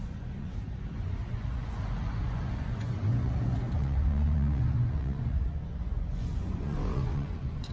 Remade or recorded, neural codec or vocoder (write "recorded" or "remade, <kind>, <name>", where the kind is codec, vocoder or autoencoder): remade, vocoder, Vocos